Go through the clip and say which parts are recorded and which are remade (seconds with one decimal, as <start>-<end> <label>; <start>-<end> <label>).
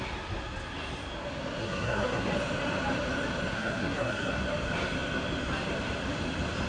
0.0-1.6 recorded; 1.6-2.3 remade; 2.3-3.5 recorded; 3.5-4.4 remade; 4.4-6.7 recorded